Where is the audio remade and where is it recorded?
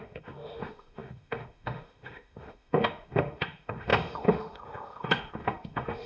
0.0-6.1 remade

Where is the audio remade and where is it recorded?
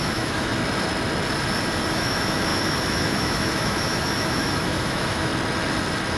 0.0-0.5 remade; 0.5-1.9 recorded; 1.9-5.3 remade; 5.3-6.2 recorded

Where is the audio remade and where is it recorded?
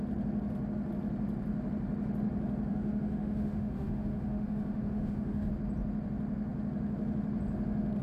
0.0-2.7 recorded; 2.7-5.5 remade; 5.5-8.0 recorded